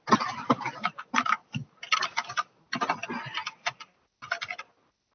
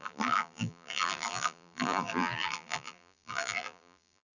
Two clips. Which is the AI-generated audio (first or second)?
second